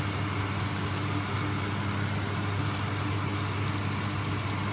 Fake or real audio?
real